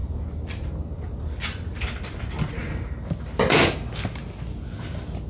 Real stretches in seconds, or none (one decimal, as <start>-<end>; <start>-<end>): 0.0-5.3